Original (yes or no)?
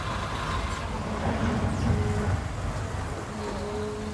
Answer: yes